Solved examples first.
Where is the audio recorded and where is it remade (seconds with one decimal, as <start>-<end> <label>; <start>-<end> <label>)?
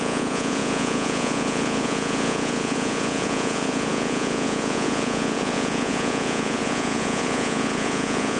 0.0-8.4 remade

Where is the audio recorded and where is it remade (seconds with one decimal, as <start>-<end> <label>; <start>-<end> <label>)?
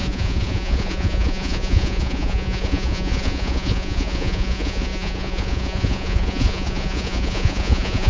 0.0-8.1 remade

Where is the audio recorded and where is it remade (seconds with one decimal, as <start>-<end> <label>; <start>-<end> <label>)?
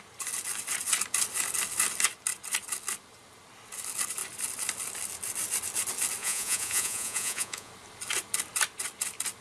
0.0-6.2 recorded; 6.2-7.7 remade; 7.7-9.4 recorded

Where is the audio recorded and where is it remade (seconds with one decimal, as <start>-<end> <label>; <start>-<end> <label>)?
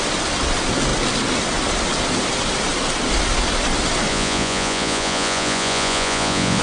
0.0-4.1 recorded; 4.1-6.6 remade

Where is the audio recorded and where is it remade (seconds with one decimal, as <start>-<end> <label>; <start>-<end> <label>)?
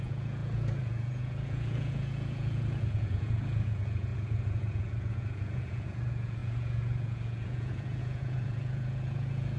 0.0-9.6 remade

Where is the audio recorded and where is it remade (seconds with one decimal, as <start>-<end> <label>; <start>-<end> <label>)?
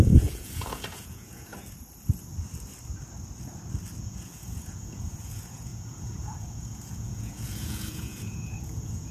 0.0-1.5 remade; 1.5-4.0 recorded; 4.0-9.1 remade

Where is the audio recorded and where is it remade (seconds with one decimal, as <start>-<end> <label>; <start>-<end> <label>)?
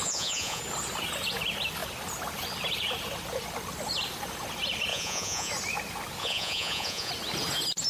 0.0-0.6 remade; 0.6-4.9 recorded; 4.9-5.5 remade; 5.5-6.2 recorded; 6.2-7.1 remade; 7.1-7.9 recorded